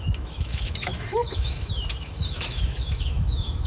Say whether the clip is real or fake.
fake